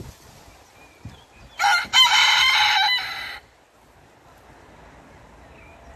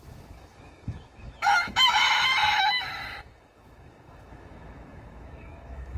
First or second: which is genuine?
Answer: first